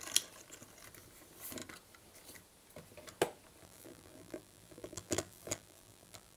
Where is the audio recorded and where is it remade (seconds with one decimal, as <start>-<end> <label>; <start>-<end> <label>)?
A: 0.0-3.6 recorded; 3.6-6.4 remade